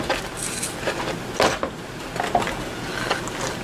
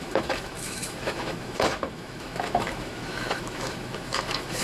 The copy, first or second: second